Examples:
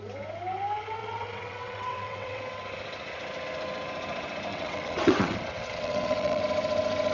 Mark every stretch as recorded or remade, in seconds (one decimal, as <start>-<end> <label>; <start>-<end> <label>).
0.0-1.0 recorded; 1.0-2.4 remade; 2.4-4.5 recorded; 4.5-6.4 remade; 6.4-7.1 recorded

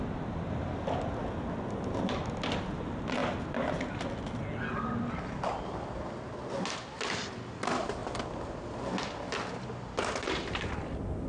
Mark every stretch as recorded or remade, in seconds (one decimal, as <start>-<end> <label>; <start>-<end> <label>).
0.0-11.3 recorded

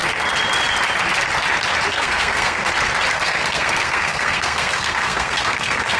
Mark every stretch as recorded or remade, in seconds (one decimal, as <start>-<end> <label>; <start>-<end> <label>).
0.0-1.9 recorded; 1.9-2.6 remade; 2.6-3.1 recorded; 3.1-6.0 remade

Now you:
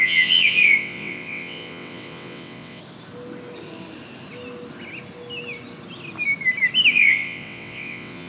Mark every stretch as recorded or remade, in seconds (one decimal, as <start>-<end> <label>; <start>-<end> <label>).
0.0-2.8 remade; 2.8-6.9 recorded; 6.9-8.3 remade

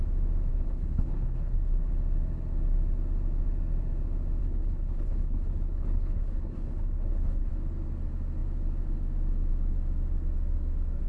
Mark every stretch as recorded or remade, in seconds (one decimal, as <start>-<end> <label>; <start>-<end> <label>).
0.0-0.5 recorded; 0.5-1.9 remade; 1.9-4.4 recorded; 4.4-7.5 remade; 7.5-11.1 recorded

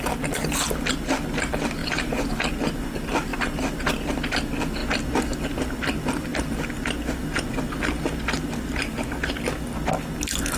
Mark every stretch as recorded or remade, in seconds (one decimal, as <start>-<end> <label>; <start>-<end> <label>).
0.0-1.8 recorded; 1.8-2.4 remade; 2.4-10.6 recorded